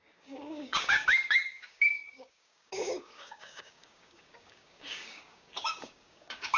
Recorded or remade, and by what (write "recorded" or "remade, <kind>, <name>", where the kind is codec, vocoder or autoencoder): remade, codec, DAC